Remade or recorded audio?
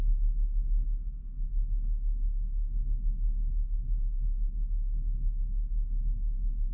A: remade